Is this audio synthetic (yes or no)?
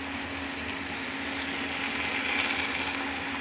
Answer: no